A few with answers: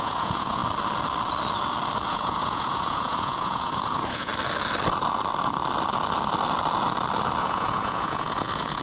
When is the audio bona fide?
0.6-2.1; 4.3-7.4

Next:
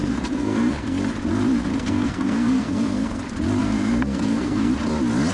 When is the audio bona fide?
1.0-1.7; 3.2-3.6; 4.7-5.3

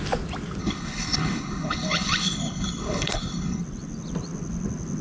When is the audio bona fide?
0.0-0.6; 3.6-5.0

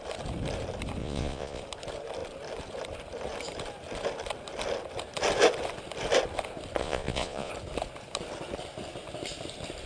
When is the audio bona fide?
0.0-1.0; 1.6-6.8; 7.5-9.9

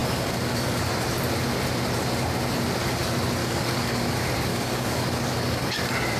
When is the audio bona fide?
0.8-3.4; 4.1-4.5; 5.8-6.2